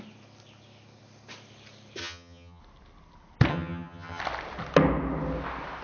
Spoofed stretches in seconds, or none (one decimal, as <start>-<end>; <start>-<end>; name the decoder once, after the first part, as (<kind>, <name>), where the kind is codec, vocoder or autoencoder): 2.0-2.6 (vocoder, HiFi-GAN); 3.5-4.2